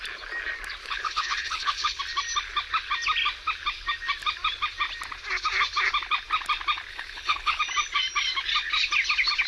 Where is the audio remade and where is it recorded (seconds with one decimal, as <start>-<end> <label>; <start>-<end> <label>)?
0.0-0.8 recorded; 0.8-2.0 remade; 2.0-6.9 recorded; 6.9-7.6 remade; 7.6-9.5 recorded